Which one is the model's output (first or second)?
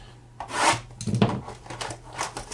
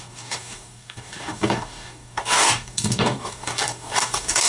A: second